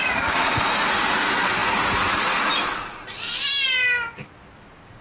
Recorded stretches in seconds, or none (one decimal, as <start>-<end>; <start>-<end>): 3.4-4.6